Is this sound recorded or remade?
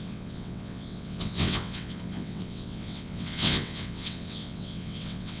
remade